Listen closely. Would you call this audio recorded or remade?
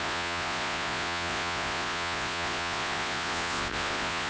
remade